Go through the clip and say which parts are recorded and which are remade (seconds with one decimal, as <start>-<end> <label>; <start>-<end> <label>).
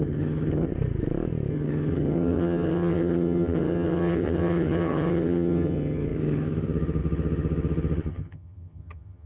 0.0-0.7 remade; 0.7-1.5 recorded; 1.5-9.3 remade